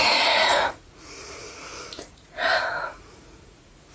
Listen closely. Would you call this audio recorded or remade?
remade